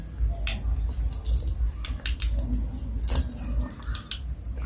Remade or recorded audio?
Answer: recorded